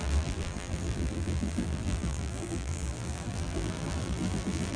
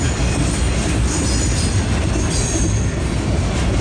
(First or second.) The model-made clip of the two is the first